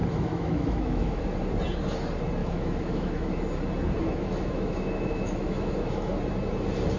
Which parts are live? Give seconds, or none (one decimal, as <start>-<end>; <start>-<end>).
1.2-2.4; 3.4-4.0; 6.1-7.0